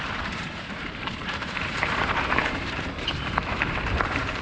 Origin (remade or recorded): remade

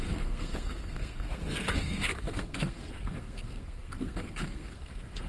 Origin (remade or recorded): remade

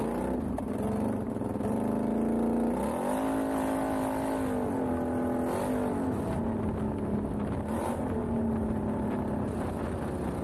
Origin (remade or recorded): recorded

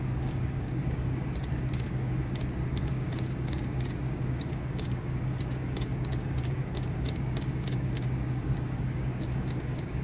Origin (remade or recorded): remade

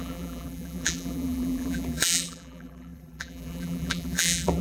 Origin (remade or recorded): remade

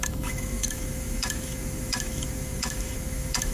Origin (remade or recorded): remade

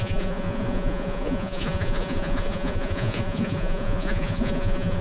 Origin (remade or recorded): remade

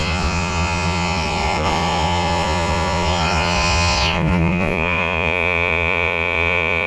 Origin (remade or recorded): remade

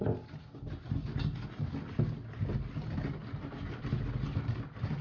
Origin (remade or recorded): recorded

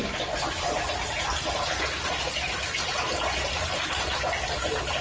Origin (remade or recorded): recorded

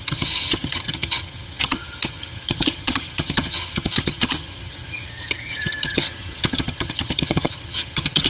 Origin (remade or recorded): remade